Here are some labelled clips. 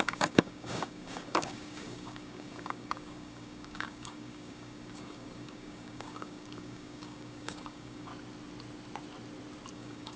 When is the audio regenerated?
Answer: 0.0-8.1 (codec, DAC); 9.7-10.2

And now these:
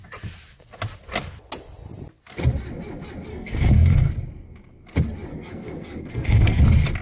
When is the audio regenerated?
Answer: 3.3-4.1 (codec, SNAC); 5.3-6.6

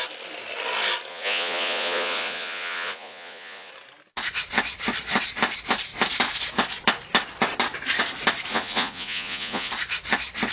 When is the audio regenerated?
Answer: 1.1-3.7 (vocoder, Vocos); 8.5-9.7

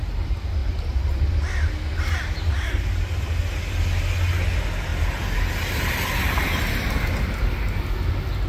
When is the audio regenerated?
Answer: none

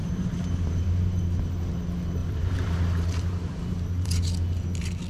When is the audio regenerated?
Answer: 0.0-1.2 (vocoder, BigVGAN v2); 2.2-4.3

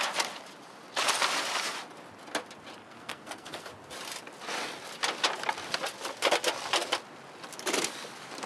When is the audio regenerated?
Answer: 2.8-3.7 (codec, SNAC)